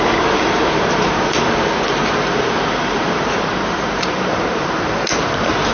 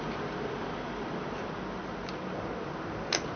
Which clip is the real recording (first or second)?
second